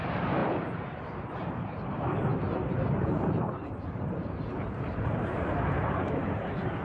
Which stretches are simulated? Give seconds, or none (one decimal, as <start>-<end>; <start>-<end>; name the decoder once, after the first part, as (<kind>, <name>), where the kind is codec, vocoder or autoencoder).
0.0-2.3 (vocoder, BigVGAN v2); 3.0-6.8